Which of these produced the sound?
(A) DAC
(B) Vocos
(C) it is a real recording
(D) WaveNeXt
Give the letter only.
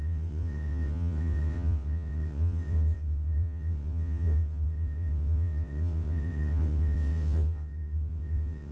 D